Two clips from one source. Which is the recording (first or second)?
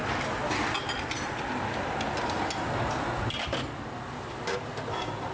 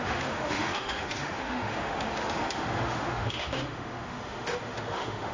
first